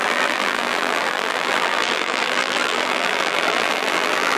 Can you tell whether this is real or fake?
fake